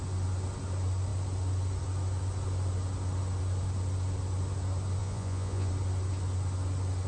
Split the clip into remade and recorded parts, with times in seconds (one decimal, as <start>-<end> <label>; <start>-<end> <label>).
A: 0.0-5.0 recorded; 5.0-5.7 remade; 5.7-7.1 recorded